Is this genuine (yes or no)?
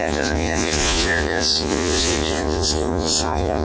no